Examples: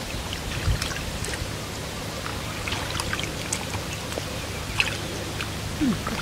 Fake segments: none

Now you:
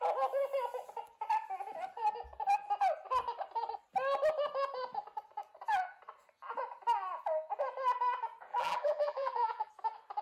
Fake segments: 8.5-9.7 (vocoder, BigVGAN v2)